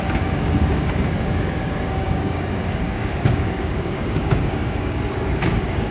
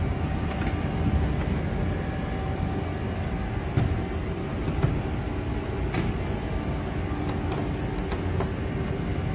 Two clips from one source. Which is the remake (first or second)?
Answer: first